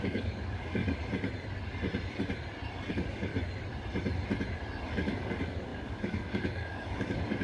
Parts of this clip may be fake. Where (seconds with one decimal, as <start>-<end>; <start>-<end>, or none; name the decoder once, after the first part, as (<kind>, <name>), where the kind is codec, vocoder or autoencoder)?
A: 0.0-0.8 (codec, DAC); 2.9-3.3; 4.9-7.4